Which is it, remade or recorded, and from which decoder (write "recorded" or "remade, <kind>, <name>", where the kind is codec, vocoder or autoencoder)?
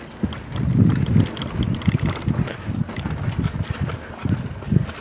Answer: recorded